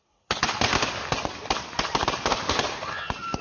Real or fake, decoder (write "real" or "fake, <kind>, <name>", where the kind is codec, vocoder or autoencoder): real